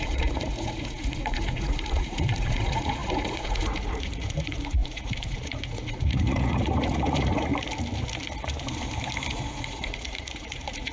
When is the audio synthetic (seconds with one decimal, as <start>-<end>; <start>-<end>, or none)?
0.0-7.5; 9.3-10.9

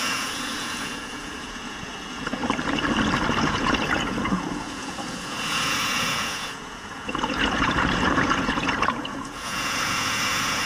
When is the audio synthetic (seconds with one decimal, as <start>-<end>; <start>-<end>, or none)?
0.0-2.4; 3.4-10.7